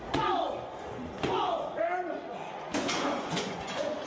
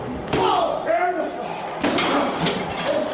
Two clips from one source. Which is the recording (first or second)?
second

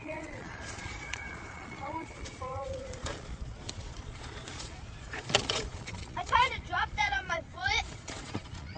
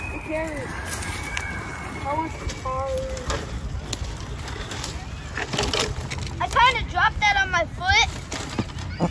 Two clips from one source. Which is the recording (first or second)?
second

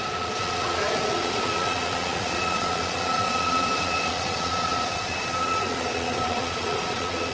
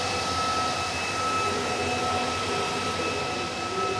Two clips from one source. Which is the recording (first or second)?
second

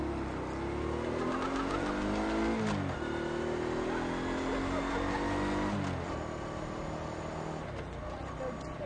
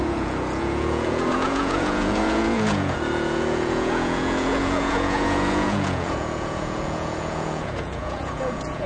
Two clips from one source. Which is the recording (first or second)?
first